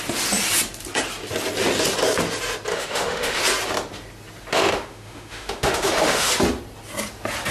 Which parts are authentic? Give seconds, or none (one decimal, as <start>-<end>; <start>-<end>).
0.0-2.7; 3.4-4.5; 6.3-7.5